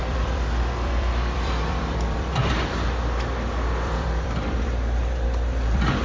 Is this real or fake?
fake